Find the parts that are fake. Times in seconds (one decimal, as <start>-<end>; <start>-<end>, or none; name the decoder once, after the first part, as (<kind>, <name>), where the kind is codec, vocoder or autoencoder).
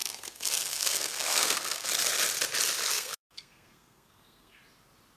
0.0-1.9 (codec, SNAC); 2.9-4.6